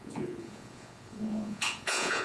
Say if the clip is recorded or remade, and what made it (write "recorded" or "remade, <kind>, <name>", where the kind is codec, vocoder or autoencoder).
remade, vocoder, Vocos